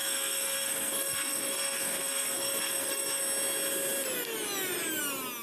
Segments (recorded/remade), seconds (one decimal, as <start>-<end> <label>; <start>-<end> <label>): 0.0-3.2 remade; 3.2-5.4 recorded